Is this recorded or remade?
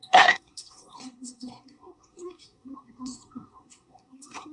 remade